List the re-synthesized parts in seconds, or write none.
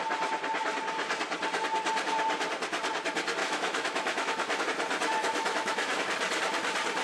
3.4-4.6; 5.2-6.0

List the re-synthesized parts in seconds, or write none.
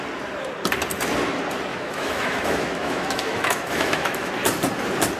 1.7-4.3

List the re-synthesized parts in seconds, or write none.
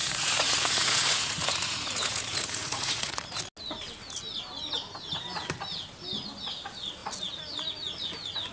0.0-3.4